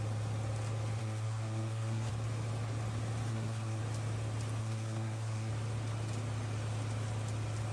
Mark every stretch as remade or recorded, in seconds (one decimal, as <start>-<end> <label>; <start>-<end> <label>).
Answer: 0.0-1.0 recorded; 1.0-2.1 remade; 2.1-3.3 recorded; 3.3-3.8 remade; 3.8-4.6 recorded; 4.6-5.5 remade; 5.5-7.7 recorded